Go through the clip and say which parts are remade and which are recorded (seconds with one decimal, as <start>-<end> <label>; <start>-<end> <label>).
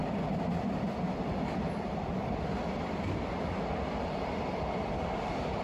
0.0-5.6 recorded